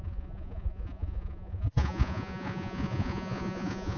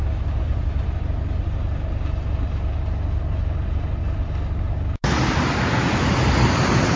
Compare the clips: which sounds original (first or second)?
second